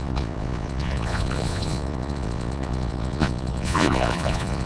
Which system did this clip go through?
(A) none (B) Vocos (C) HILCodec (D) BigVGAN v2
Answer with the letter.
B